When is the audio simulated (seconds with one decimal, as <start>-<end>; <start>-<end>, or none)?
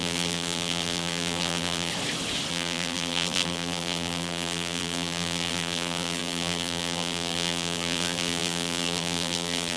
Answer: 0.0-1.9; 2.5-9.8